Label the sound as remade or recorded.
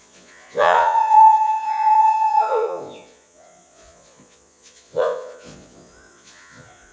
remade